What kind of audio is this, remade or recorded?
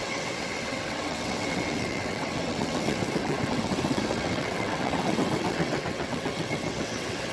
remade